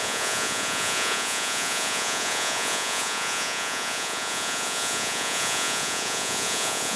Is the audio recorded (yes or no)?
no